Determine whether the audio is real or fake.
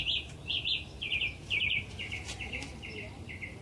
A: fake